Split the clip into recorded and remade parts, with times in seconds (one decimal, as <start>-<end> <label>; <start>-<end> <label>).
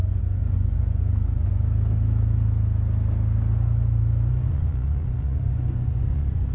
0.0-1.6 remade; 1.6-4.3 recorded; 4.3-6.5 remade